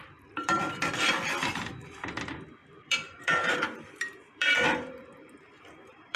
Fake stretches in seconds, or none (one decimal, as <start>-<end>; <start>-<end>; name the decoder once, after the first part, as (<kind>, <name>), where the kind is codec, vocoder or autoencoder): 0.0-0.9 (vocoder, BigVGAN v2); 2.6-6.2